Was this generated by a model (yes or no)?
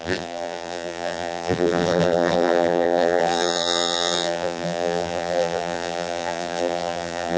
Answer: yes